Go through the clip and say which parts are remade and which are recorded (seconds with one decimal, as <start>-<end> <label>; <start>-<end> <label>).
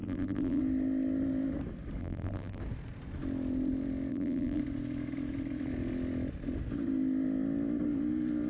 0.0-0.6 remade; 0.6-2.0 recorded; 2.0-2.6 remade; 2.6-4.1 recorded; 4.1-4.6 remade; 4.6-8.5 recorded